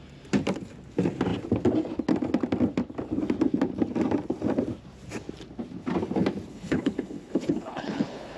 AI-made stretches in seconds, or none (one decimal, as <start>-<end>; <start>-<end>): 6.5-8.4